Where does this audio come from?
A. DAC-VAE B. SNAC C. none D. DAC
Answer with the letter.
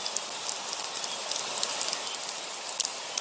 C